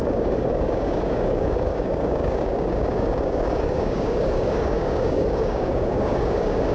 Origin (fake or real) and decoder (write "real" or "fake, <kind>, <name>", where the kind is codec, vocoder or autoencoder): fake, codec, DAC